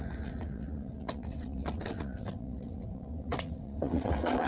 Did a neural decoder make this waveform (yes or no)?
yes